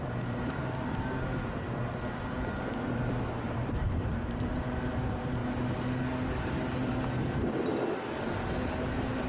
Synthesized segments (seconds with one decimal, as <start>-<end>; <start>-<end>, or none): 0.0-1.3; 3.2-5.4; 8.8-9.3